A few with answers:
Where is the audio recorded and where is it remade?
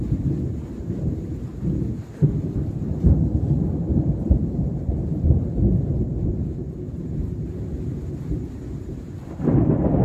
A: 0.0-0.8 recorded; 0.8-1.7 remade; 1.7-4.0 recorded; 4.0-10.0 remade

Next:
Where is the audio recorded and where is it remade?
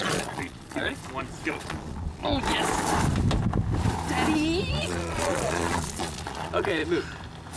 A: 0.0-1.0 remade; 1.0-1.5 recorded; 1.5-2.2 remade; 2.2-4.7 recorded; 4.7-6.8 remade; 6.8-7.6 recorded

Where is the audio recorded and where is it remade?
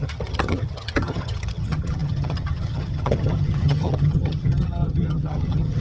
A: 0.0-5.8 remade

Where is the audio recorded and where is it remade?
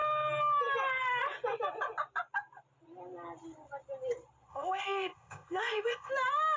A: 0.0-4.5 recorded; 4.5-6.1 remade; 6.1-6.6 recorded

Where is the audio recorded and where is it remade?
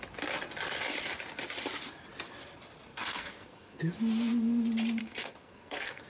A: 0.0-2.9 recorded; 2.9-3.8 remade; 3.8-5.0 recorded; 5.0-6.1 remade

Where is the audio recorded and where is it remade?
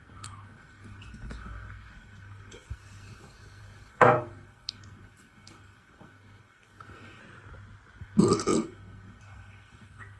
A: 0.0-7.2 remade; 7.2-8.0 recorded; 8.0-10.2 remade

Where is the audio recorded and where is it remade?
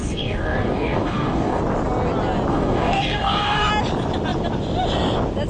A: 0.0-1.6 remade; 1.6-2.5 recorded; 2.5-3.7 remade; 3.7-5.5 recorded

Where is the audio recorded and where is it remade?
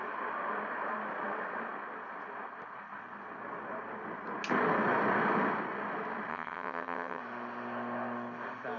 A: 0.0-6.3 recorded; 6.3-7.2 remade; 7.2-8.8 recorded